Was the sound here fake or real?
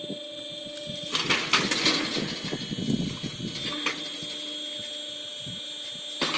real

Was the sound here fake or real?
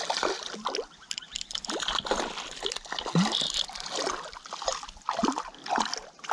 real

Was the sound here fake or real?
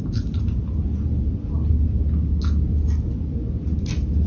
real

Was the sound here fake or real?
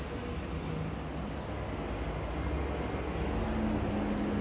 real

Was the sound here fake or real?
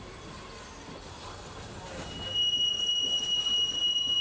real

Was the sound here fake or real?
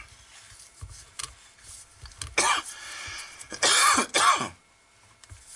real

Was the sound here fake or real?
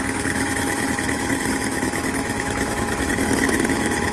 fake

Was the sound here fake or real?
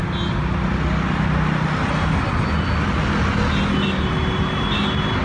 real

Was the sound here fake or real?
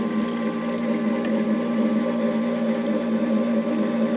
real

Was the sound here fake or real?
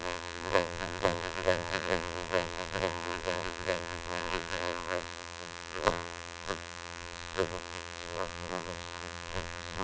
fake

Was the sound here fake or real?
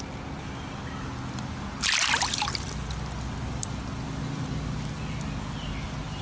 real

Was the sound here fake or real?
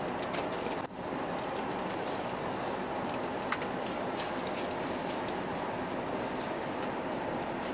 real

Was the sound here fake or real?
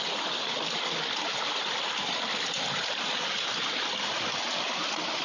real